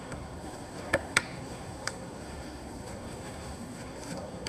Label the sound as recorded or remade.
remade